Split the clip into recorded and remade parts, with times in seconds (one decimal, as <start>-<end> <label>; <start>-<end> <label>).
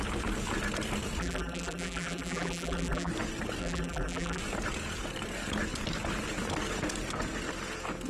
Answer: 0.0-1.2 recorded; 1.2-3.1 remade; 3.1-3.6 recorded; 3.6-4.4 remade; 4.4-8.1 recorded